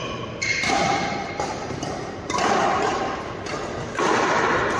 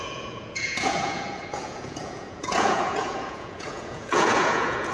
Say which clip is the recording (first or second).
first